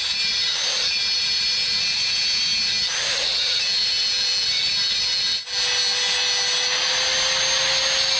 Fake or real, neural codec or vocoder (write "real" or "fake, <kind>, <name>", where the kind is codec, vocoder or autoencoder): real